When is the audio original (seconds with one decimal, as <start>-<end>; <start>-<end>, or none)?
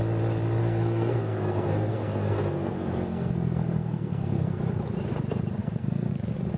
0.0-0.6; 4.6-5.6; 6.1-6.6